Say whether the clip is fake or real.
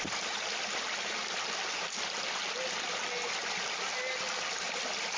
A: real